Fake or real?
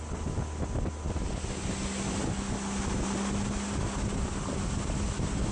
real